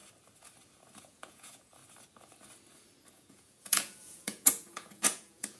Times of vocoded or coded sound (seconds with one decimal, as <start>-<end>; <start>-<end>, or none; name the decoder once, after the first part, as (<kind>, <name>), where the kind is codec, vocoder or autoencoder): 1.0-1.8 (vocoder, Vocos); 3.1-5.6